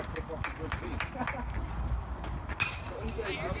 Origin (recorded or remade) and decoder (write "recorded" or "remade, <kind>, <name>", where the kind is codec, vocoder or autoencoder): recorded